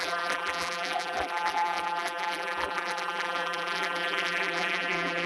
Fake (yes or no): yes